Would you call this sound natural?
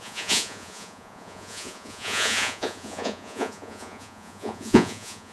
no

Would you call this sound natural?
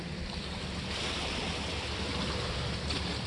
yes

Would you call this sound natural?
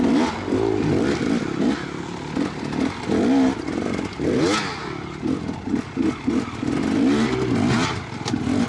yes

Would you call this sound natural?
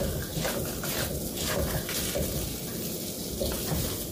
yes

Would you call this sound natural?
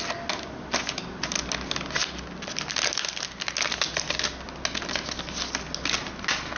yes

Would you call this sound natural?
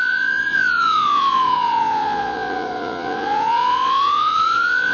no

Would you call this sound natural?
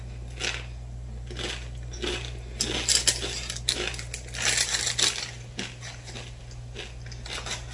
yes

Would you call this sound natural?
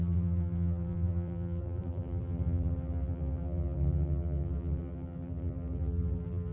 no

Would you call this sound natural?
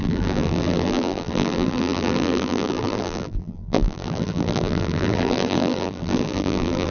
no